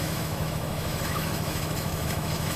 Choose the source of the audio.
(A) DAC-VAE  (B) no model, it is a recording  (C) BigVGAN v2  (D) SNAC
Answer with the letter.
A